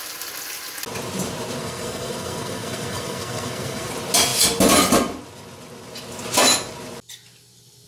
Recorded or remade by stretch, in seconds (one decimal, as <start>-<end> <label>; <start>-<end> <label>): 0.0-1.6 recorded; 1.6-3.9 remade; 3.9-7.9 recorded